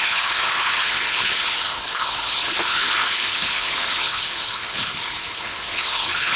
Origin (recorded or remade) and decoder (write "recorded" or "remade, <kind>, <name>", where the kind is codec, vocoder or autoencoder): remade, codec, HILCodec